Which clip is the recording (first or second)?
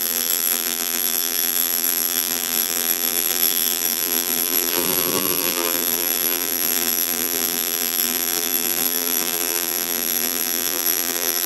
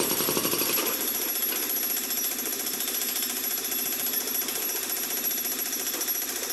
second